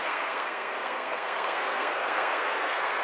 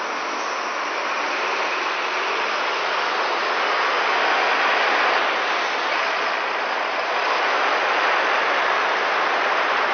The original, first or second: second